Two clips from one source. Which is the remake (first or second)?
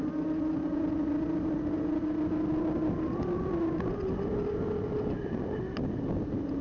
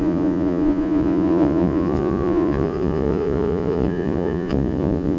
second